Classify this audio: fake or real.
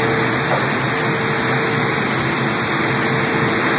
real